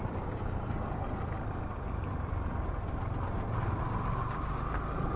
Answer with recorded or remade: recorded